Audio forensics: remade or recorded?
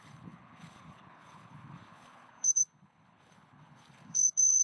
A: remade